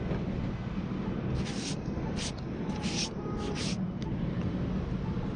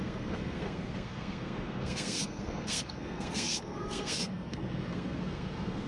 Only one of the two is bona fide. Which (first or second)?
first